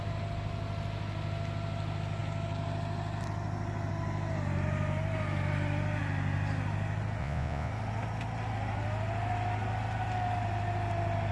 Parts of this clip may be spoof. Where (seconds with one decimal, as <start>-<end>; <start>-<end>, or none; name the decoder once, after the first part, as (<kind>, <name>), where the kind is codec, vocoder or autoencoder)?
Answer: 7.2-7.7 (vocoder, Vocos)